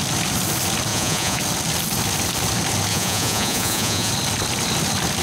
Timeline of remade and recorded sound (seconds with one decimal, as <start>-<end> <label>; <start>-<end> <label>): 0.0-0.9 recorded; 0.9-1.4 remade; 1.4-2.9 recorded; 2.9-4.1 remade; 4.1-5.2 recorded

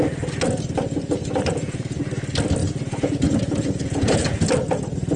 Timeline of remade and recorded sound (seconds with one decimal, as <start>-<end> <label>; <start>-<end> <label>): 0.0-1.5 recorded; 1.5-2.0 remade; 2.0-2.6 recorded; 2.6-4.8 remade; 4.8-5.2 recorded

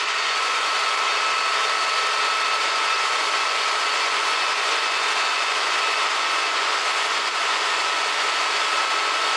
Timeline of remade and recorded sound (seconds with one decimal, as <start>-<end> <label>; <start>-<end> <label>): 0.0-1.1 remade; 1.1-2.6 recorded; 2.6-9.4 remade

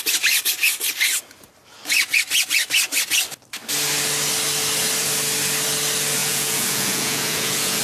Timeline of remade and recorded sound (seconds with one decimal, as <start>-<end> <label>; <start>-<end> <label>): 0.0-6.2 recorded; 6.2-7.8 remade

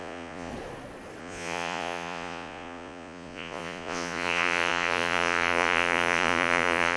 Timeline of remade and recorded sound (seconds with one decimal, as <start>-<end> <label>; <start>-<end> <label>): 0.0-0.5 remade; 0.5-1.2 recorded; 1.2-7.0 remade

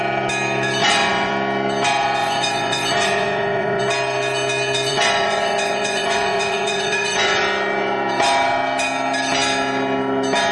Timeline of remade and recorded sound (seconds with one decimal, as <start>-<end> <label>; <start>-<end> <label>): 0.0-0.8 recorded; 0.8-1.3 remade; 1.3-2.2 recorded; 2.2-3.8 remade; 3.8-4.9 recorded; 4.9-7.4 remade; 7.4-10.5 recorded